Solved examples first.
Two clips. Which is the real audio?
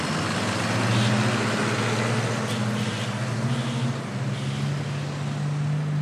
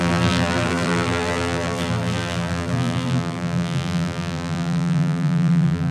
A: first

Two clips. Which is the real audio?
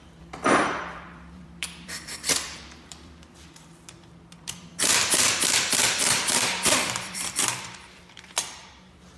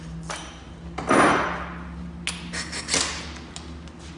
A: second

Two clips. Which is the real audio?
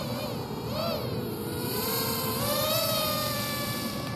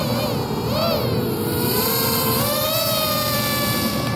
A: second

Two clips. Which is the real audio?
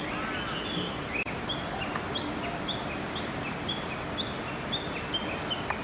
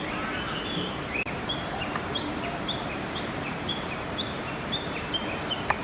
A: first